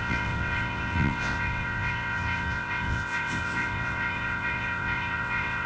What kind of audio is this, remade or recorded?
remade